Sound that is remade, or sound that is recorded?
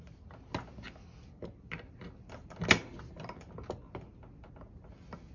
recorded